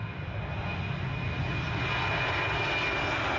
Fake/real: real